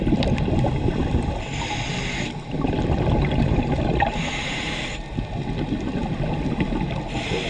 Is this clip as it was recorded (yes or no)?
yes